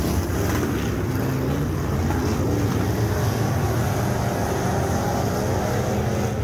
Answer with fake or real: real